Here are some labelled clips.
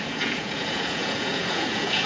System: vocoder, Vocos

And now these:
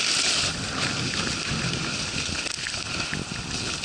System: none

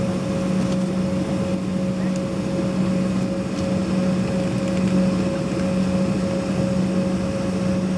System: none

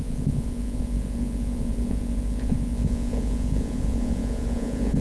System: vocoder, Vocos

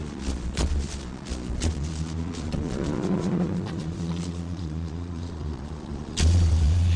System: vocoder, Vocos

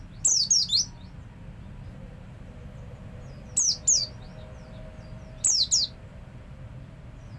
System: none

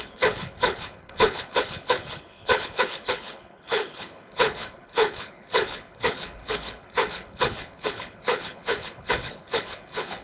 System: codec, HILCodec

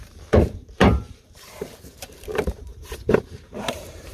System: vocoder, BigVGAN v2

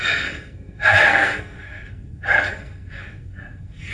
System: codec, SNAC